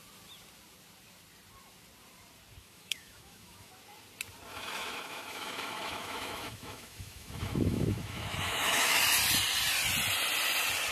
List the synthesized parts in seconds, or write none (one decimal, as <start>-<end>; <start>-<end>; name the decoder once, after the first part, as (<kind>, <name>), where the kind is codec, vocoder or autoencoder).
2.6-3.7 (autoencoder, DAC-VAE); 4.5-9.0

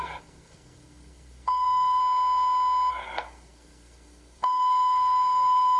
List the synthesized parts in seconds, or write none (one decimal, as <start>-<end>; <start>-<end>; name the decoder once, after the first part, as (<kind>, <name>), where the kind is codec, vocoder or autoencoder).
0.0-2.0 (codec, SNAC); 2.9-5.8

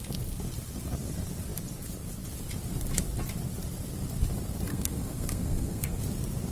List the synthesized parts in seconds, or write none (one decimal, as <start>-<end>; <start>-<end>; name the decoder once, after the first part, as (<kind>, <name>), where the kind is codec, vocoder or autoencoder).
4.7-6.0 (codec, SNAC)

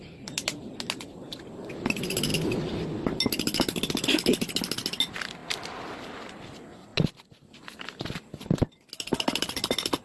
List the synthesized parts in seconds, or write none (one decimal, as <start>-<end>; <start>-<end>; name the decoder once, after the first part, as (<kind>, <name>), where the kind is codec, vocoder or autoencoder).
none

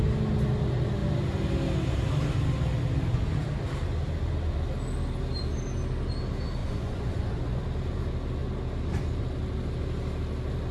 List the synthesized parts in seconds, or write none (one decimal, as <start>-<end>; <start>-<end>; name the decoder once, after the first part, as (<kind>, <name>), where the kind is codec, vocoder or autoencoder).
6.6-7.6 (vocoder, Vocos)

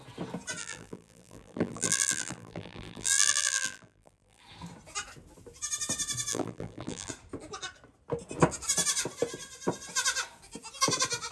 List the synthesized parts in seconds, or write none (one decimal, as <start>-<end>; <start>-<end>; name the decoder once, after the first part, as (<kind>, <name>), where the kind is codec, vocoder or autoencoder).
0.6-4.4 (vocoder, BigVGAN v2); 6.3-7.1